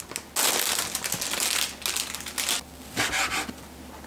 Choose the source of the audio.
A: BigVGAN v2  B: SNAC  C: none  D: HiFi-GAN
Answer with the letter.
C